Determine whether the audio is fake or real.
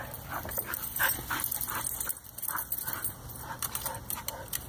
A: fake